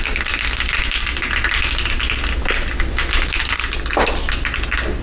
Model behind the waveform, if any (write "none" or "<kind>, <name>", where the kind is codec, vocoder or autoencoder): none